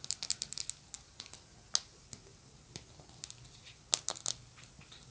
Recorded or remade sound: recorded